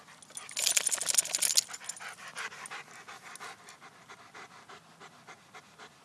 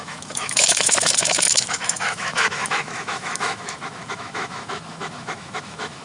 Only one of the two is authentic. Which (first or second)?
first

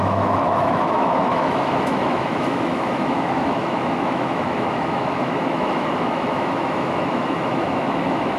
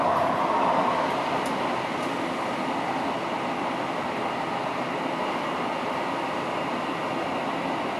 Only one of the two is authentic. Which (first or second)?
second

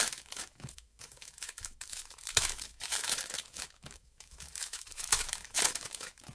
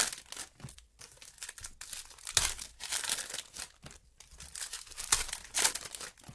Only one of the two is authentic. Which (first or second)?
second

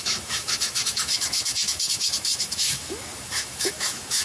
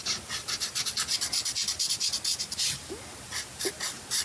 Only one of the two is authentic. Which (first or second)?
second